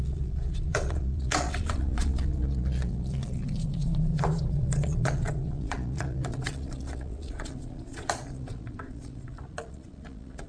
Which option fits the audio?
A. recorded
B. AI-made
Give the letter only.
B